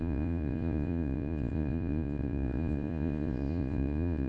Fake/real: fake